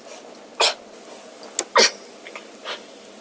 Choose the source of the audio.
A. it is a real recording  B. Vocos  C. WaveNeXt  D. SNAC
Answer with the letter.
A